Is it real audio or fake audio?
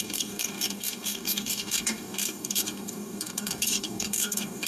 fake